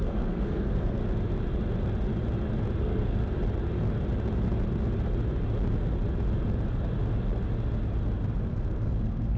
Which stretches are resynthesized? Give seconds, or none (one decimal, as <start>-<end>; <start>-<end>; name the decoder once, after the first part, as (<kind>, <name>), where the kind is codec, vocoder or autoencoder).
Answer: 0.0-1.0 (codec, SNAC); 2.8-3.2; 8.4-9.4